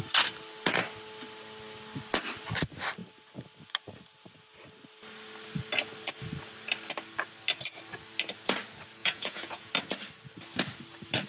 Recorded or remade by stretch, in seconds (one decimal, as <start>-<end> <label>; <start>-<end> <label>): 0.0-9.0 recorded; 9.0-9.7 remade; 9.7-11.3 recorded